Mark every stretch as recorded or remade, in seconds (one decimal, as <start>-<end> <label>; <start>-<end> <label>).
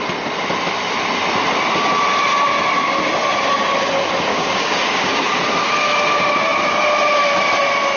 0.0-4.3 recorded; 4.3-5.4 remade; 5.4-8.0 recorded